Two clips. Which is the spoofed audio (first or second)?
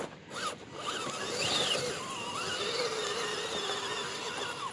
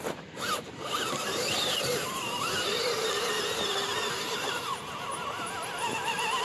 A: second